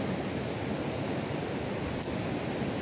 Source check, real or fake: real